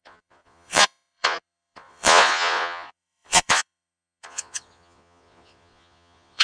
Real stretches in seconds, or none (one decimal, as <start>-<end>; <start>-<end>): none